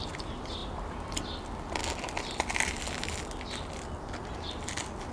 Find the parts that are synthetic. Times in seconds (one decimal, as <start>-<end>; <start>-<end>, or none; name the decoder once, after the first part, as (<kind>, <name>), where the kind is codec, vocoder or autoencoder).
none